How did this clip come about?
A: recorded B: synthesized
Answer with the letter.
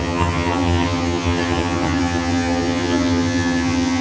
B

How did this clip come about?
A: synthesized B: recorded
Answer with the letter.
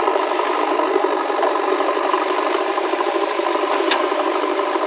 A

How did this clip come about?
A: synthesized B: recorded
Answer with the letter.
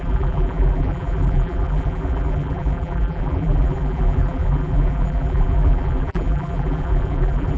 A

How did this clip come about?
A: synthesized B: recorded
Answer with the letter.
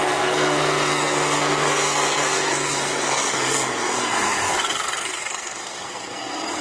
A